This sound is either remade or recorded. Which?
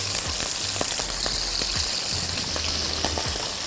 recorded